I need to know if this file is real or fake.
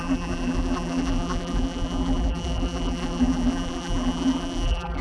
fake